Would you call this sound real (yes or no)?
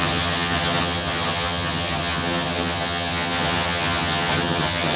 no